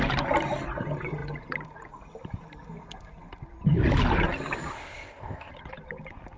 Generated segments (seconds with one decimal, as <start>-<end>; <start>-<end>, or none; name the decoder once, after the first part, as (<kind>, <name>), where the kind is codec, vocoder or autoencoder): 4.7-5.5 (codec, ZipCodec)